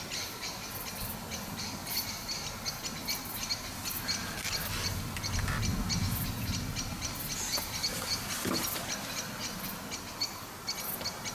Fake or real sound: real